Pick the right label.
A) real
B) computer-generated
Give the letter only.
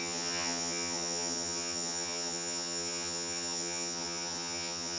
B